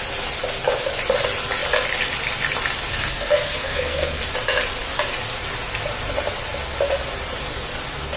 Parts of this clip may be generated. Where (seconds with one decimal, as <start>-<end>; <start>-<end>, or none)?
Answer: 2.9-4.2